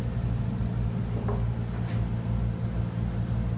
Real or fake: real